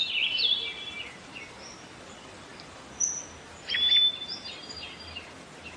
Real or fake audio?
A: real